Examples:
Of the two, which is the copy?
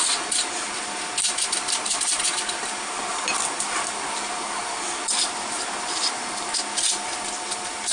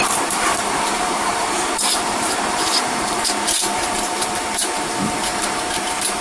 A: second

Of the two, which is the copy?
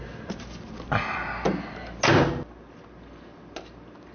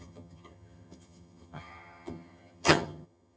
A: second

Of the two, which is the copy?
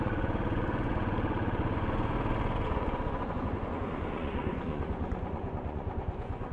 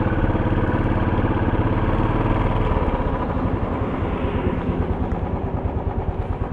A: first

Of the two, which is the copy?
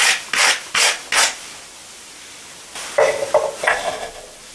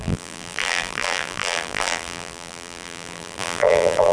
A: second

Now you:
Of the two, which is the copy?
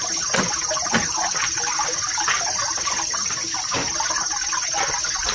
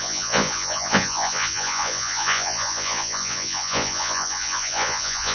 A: second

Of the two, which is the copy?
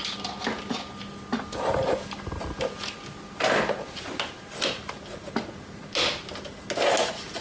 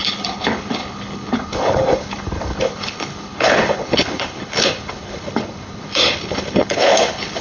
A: second